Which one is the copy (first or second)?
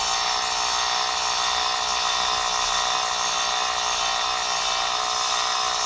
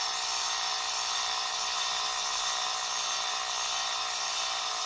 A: second